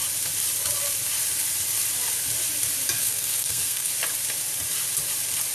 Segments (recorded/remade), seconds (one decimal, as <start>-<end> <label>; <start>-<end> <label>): 0.0-3.0 recorded; 3.0-3.9 remade; 3.9-5.5 recorded